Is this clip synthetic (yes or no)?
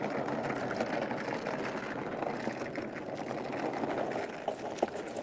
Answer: no